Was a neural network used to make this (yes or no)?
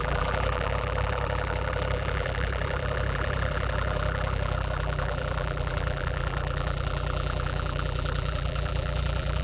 yes